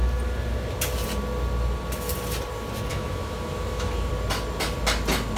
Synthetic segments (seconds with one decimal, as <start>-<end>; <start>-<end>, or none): 2.9-4.1